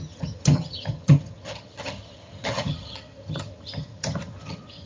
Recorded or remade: remade